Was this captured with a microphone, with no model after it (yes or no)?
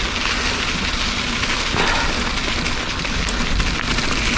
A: yes